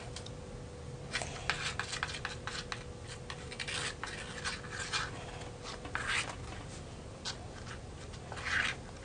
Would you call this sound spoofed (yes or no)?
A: no